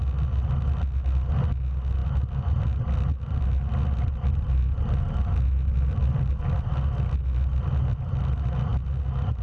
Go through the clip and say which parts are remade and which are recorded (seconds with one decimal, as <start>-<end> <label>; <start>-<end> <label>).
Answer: 0.0-9.4 recorded